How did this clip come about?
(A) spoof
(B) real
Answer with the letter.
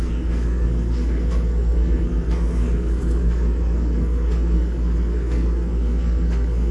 A